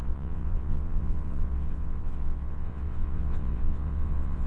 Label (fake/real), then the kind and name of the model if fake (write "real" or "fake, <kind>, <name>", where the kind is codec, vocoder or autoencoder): fake, vocoder, WaveNeXt